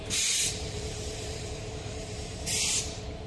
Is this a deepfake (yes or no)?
yes